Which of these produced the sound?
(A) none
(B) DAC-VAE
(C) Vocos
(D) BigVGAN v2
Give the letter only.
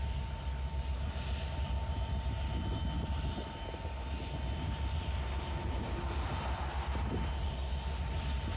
A